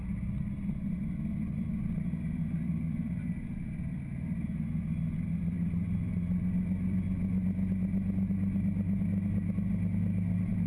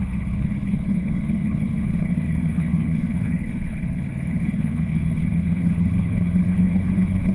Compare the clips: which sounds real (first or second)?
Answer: first